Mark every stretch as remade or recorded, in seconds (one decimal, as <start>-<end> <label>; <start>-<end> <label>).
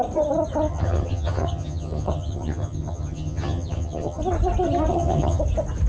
0.0-0.7 recorded; 0.7-4.2 remade; 4.2-4.9 recorded; 4.9-5.4 remade; 5.4-5.9 recorded